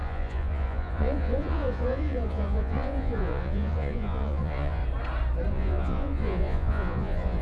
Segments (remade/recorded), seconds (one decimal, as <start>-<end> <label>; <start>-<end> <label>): 0.0-4.8 remade; 4.8-5.5 recorded; 5.5-7.4 remade